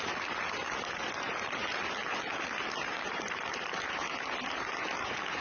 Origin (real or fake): real